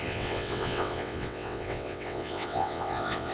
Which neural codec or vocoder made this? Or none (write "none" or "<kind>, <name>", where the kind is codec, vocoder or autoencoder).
vocoder, WaveNeXt